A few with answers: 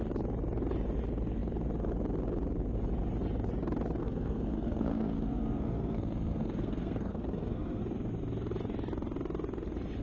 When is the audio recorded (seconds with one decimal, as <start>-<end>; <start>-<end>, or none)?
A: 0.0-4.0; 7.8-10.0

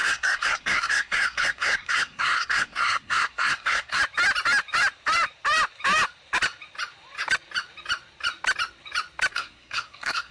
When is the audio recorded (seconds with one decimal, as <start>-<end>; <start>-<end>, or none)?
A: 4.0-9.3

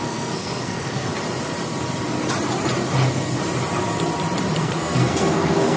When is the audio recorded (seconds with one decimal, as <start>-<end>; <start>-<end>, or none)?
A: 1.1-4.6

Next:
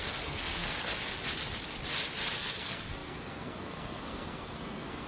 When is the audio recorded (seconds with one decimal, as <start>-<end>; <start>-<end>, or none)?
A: 0.9-2.4

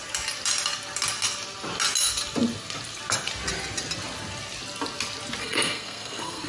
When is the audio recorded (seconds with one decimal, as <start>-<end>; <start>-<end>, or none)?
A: 0.0-5.4